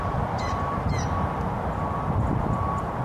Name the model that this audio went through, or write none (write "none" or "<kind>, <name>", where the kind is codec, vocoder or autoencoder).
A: vocoder, BigVGAN v2